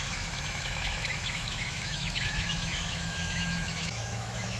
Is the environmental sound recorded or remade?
remade